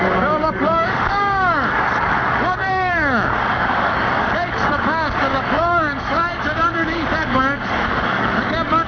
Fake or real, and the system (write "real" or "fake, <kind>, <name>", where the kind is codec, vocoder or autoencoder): fake, codec, DAC